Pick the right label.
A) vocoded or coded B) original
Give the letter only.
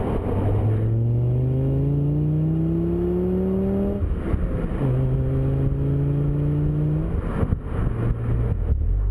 B